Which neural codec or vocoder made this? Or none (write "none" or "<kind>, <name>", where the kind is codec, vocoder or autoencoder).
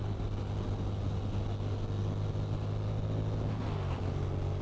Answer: none